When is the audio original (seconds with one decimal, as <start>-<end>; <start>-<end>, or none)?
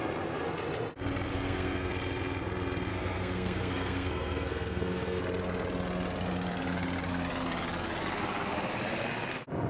0.0-1.3; 1.9-2.9; 5.2-9.7